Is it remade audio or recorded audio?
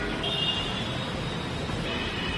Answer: recorded